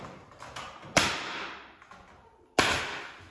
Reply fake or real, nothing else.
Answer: real